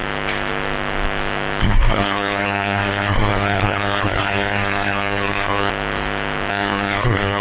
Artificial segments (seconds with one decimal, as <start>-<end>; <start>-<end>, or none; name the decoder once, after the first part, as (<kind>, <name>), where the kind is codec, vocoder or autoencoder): 1.6-5.7 (codec, SNAC); 6.5-7.4